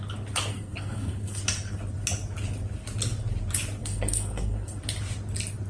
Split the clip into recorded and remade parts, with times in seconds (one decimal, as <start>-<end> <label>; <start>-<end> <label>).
0.0-0.5 recorded; 0.5-1.4 remade; 1.4-3.8 recorded; 3.8-4.8 remade; 4.8-5.7 recorded